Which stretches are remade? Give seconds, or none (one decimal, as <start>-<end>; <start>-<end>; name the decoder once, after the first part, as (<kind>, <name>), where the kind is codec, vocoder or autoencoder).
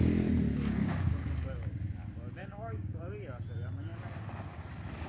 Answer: 0.5-1.1 (codec, DAC); 2.4-3.0